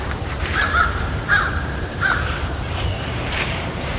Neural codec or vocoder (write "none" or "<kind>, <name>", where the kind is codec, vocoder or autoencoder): vocoder, BigVGAN v2